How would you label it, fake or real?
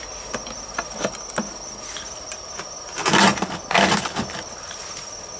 real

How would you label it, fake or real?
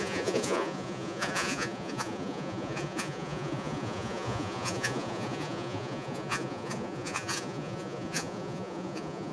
fake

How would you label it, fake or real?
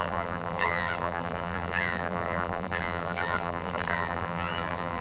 fake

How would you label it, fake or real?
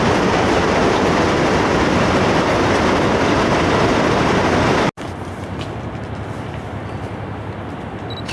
real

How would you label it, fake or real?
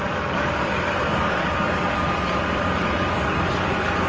fake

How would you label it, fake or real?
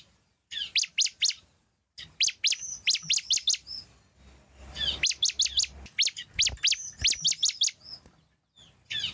real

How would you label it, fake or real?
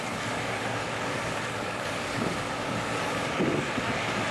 fake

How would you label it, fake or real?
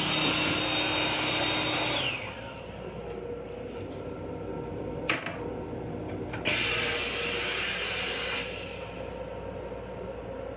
real